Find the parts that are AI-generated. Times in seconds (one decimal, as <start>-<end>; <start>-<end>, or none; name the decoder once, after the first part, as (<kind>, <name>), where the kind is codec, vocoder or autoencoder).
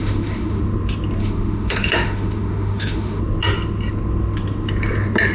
0.0-0.6 (autoencoder, DAC-VAE); 1.2-3.2